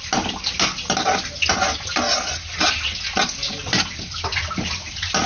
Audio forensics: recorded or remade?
recorded